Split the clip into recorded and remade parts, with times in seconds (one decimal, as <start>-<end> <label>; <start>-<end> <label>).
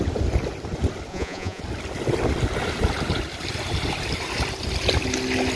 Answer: 0.0-1.1 recorded; 1.1-1.6 remade; 1.6-5.6 recorded